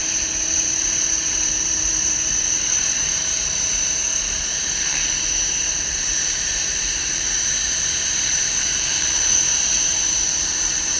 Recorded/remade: remade